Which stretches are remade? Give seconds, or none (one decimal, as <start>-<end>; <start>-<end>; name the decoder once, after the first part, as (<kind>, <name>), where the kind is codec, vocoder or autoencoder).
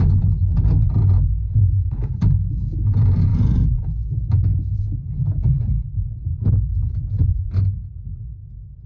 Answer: 0.0-8.9 (vocoder, Vocos)